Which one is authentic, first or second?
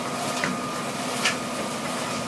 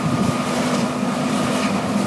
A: first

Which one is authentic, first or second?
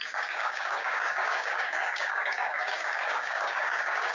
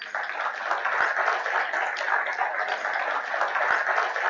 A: second